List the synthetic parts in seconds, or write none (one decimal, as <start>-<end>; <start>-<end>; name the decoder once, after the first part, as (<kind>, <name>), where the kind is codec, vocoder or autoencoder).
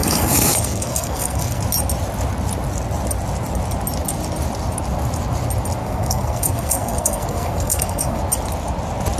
0.0-1.6 (codec, SNAC); 5.8-8.2